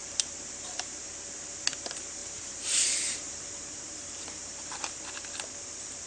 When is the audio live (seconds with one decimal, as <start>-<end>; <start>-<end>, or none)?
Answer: 1.0-2.2; 4.9-6.1